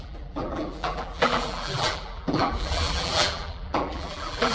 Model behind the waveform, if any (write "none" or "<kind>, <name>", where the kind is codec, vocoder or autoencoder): vocoder, BigVGAN v2